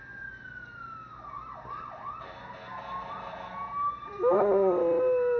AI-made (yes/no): no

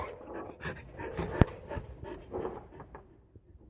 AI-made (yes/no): no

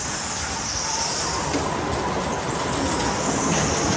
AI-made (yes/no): no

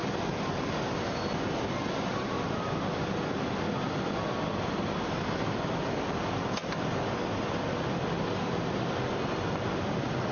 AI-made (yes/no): no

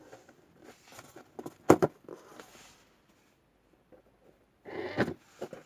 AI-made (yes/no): no